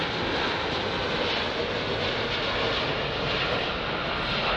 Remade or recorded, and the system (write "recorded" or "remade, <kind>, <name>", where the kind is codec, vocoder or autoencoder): recorded